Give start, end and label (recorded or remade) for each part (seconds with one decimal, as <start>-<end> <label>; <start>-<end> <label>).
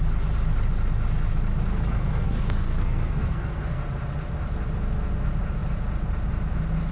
0.0-1.7 recorded; 1.7-3.8 remade; 3.8-6.9 recorded